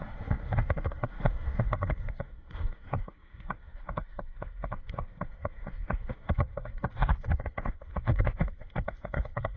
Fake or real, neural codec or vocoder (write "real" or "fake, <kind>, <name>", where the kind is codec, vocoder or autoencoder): fake, codec, SNAC